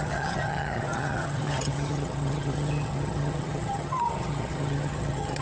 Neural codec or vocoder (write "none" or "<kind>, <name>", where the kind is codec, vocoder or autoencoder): vocoder, HiFi-GAN